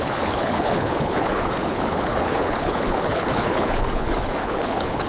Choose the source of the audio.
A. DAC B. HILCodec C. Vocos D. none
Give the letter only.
B